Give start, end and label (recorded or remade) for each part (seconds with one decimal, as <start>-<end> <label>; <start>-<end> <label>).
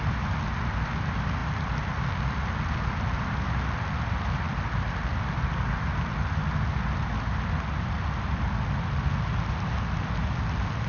0.0-10.9 recorded